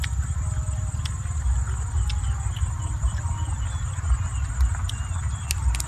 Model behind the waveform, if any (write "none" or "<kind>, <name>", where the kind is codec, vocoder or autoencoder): none